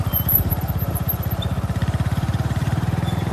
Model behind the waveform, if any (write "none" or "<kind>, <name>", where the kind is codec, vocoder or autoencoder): vocoder, BigVGAN v2